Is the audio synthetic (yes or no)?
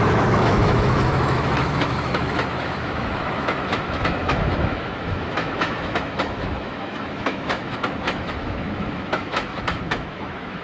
yes